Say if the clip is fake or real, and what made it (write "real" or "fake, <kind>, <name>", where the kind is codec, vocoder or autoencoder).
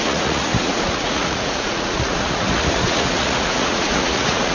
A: fake, vocoder, Vocos